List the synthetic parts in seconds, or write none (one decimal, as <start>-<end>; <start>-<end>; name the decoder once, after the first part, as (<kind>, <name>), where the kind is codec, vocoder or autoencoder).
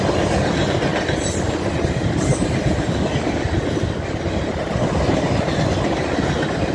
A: none